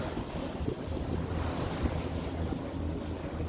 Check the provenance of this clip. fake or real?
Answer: real